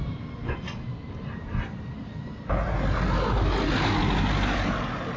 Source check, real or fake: real